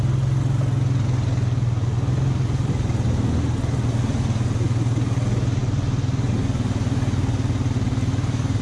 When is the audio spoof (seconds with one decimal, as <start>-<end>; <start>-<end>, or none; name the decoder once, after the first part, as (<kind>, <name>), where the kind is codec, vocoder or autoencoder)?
none